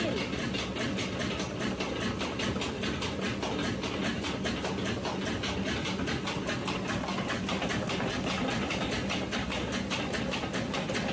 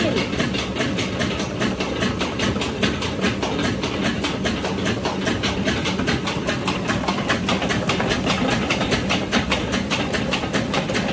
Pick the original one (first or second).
first